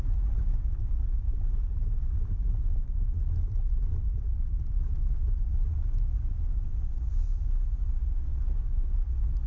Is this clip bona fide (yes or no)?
yes